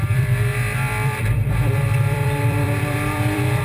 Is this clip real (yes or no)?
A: no